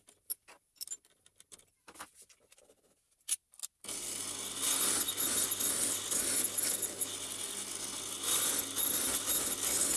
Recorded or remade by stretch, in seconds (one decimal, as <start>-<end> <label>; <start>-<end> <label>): 0.0-10.0 recorded